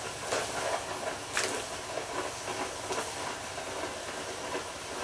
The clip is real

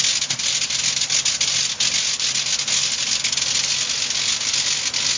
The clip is real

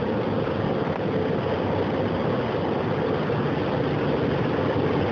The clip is real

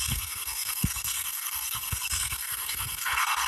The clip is fake